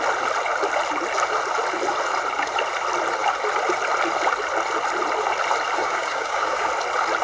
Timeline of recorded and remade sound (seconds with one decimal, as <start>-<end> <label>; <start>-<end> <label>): 0.0-5.8 recorded; 5.8-6.7 remade; 6.7-7.2 recorded

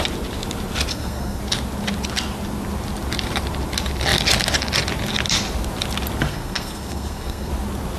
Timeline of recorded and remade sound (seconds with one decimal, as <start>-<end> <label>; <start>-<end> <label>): 0.0-0.9 recorded; 0.9-1.4 remade; 1.4-6.3 recorded; 6.3-7.5 remade; 7.5-8.0 recorded

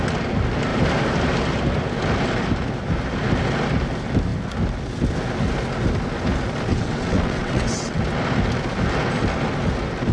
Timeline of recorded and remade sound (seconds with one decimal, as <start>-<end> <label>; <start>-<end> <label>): 0.0-6.7 recorded; 6.7-8.0 remade; 8.0-10.1 recorded

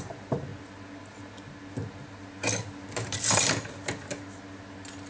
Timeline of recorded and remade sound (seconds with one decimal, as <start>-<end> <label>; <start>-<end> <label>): 0.0-5.1 recorded

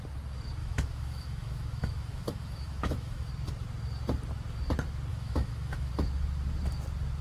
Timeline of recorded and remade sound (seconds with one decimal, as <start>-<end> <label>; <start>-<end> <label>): 0.0-0.6 recorded; 0.6-3.3 remade; 3.3-5.1 recorded; 5.1-5.9 remade; 5.9-7.2 recorded

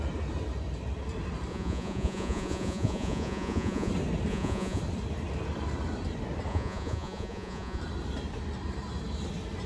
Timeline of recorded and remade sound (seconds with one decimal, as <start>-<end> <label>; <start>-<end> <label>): 0.0-1.5 recorded; 1.5-3.9 remade; 3.9-4.3 recorded; 4.3-4.8 remade; 4.8-6.5 recorded; 6.5-7.8 remade; 7.8-9.7 recorded

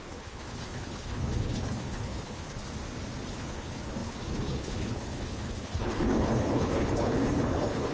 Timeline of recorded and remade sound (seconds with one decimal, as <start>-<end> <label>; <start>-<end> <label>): 0.0-2.6 remade; 2.6-3.3 recorded; 3.3-7.9 remade